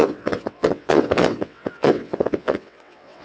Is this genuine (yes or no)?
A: no